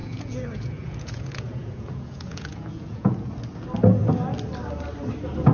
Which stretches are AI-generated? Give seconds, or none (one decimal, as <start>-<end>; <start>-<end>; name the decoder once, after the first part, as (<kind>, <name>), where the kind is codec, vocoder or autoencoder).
0.0-3.3 (vocoder, Vocos)